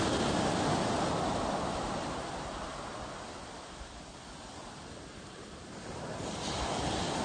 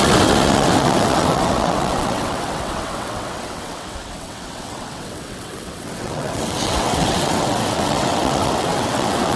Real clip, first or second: first